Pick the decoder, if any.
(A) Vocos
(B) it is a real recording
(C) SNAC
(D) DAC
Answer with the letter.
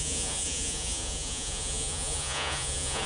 A